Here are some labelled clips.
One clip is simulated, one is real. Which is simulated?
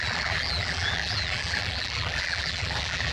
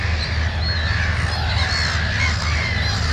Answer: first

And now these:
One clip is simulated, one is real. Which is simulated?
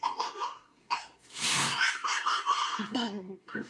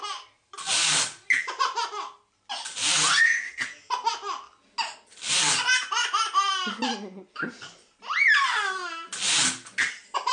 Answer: first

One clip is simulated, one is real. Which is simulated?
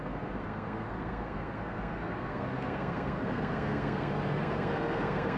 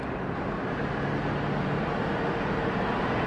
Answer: first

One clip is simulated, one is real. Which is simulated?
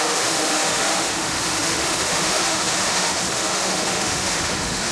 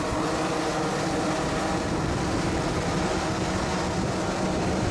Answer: first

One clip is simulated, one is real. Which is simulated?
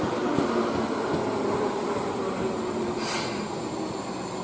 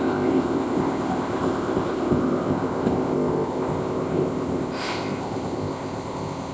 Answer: second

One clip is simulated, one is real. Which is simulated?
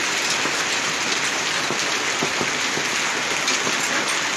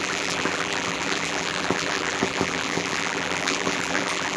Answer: second